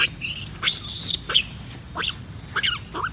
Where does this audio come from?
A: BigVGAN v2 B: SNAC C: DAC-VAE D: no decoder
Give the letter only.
D